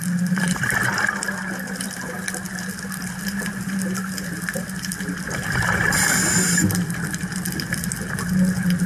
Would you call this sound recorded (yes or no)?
yes